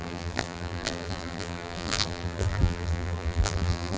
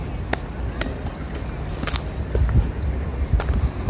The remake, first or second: first